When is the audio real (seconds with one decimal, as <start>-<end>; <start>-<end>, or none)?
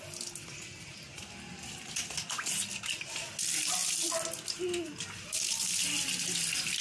0.0-6.8